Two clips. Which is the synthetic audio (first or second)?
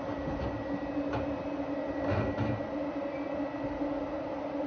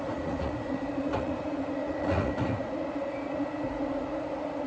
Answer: second